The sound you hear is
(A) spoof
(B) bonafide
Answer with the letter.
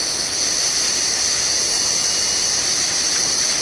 B